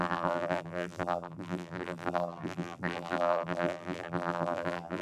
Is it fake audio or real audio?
fake